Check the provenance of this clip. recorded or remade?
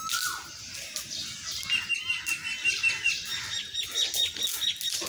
recorded